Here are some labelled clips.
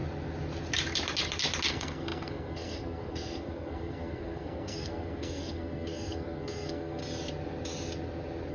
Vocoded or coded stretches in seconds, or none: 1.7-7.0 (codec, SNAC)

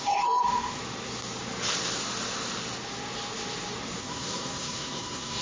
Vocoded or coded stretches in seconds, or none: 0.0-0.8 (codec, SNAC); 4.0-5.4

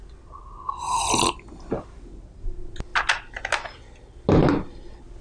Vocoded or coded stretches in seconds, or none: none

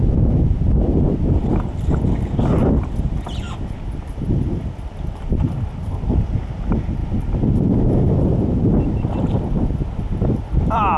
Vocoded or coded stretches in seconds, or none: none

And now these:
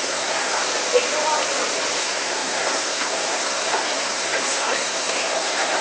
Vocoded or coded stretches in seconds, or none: 0.0-0.6 (codec, SNAC); 2.0-5.8